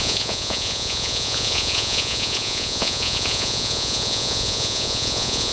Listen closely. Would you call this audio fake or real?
fake